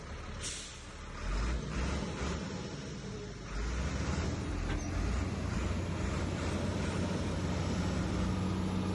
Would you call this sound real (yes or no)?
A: yes